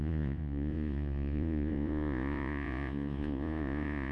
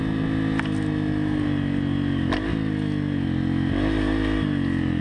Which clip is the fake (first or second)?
first